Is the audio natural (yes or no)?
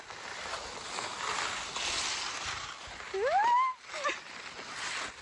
yes